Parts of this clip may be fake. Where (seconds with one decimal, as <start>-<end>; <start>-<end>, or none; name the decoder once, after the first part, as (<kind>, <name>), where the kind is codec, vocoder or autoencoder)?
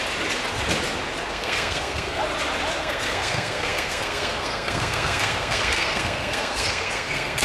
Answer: 1.3-2.2 (codec, SNAC); 2.8-7.4